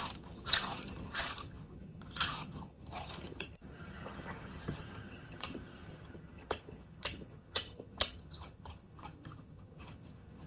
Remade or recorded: remade